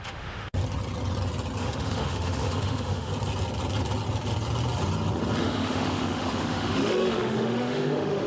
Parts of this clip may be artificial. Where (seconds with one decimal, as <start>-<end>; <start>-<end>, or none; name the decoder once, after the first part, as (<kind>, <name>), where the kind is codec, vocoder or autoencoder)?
0.0-0.6 (autoencoder, DAC-VAE); 1.6-3.1; 5.4-8.3